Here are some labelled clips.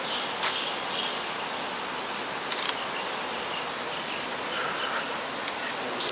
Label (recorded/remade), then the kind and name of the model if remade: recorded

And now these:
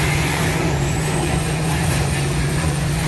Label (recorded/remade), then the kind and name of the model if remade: remade, vocoder, Vocos